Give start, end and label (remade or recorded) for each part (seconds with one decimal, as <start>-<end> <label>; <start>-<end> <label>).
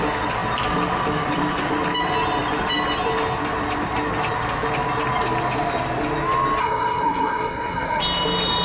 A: 0.0-6.6 recorded; 6.6-8.0 remade; 8.0-8.6 recorded